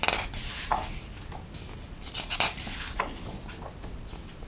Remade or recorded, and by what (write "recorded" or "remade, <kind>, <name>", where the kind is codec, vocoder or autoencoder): recorded